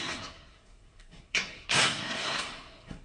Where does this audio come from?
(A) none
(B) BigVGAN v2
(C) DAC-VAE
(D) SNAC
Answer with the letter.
D